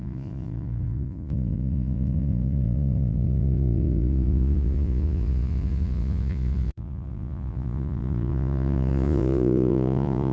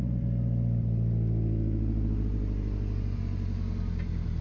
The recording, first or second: second